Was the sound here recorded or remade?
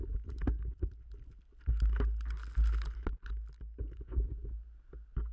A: recorded